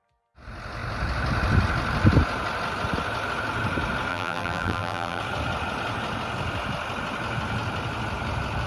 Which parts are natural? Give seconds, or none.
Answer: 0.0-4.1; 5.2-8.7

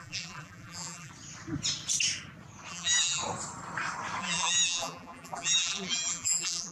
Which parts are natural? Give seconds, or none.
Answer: 1.1-2.7; 3.2-4.2

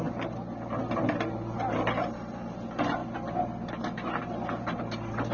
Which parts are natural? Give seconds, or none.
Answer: 0.0-5.3

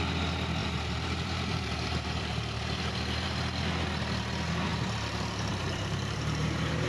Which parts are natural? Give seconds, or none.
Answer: 0.0-0.6; 3.4-4.7

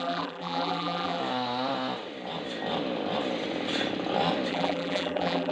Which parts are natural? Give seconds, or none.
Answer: 1.2-4.5

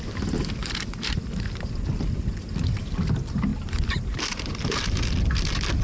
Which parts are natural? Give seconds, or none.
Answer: 0.0-0.6; 1.7-3.5; 5.1-5.8

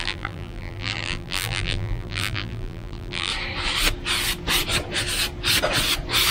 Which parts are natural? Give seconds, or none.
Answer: 3.3-6.3